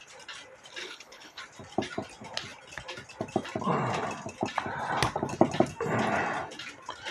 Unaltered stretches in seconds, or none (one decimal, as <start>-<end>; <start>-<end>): 0.0-0.8; 1.4-7.1